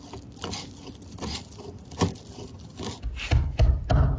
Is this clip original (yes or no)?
yes